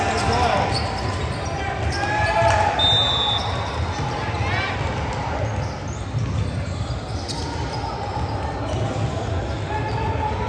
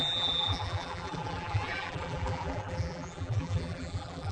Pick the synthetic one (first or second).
second